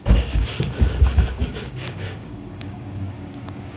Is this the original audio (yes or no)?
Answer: no